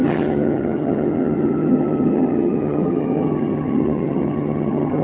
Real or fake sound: fake